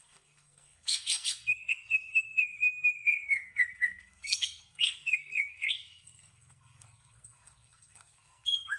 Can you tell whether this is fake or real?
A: fake